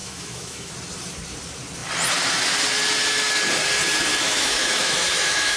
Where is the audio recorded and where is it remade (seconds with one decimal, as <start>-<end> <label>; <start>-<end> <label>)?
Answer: 0.0-0.7 remade; 0.7-4.1 recorded; 4.1-5.6 remade